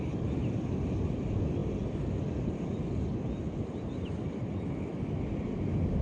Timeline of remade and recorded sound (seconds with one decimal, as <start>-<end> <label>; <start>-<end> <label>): 0.0-6.0 recorded

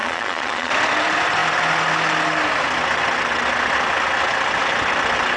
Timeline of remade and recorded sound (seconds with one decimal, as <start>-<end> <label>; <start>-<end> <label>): 0.0-0.7 remade; 0.7-5.4 recorded

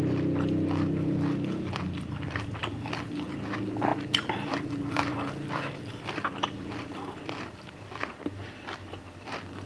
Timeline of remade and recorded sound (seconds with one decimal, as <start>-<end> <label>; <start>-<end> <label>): 0.0-3.9 recorded; 3.9-8.6 remade; 8.6-9.7 recorded

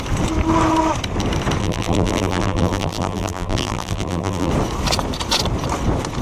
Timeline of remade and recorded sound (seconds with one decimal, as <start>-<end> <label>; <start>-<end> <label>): 0.0-1.6 recorded; 1.6-4.5 remade; 4.5-6.2 recorded